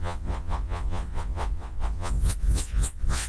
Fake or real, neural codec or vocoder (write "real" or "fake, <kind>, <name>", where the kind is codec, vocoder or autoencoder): fake, vocoder, Vocos